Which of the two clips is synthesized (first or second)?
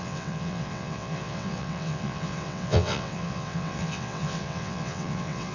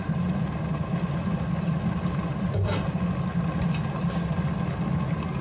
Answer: first